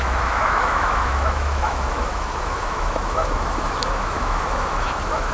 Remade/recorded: remade